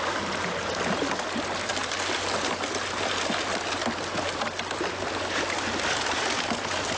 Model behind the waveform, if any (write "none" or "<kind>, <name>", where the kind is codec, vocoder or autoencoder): none